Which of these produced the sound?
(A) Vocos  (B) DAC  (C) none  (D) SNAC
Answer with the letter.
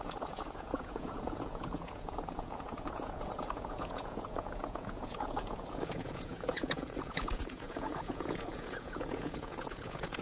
A